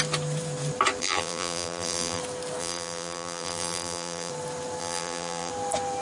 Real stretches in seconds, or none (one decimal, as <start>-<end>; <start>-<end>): 0.0-1.0; 2.2-2.6; 4.3-4.8; 5.5-6.0